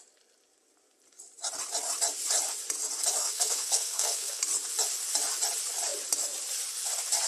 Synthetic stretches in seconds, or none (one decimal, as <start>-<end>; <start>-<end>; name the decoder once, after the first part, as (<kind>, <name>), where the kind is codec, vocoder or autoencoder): 3.2-4.4 (codec, SNAC)